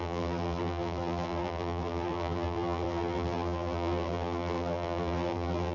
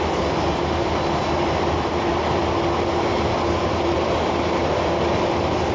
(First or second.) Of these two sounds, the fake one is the first